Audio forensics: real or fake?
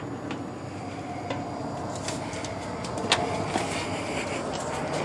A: real